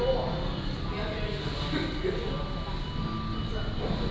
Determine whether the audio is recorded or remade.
recorded